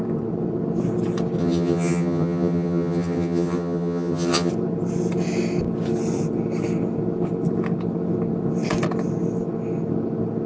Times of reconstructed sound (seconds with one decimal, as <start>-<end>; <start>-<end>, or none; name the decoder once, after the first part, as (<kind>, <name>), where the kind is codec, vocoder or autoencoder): 1.4-4.5 (vocoder, HiFi-GAN)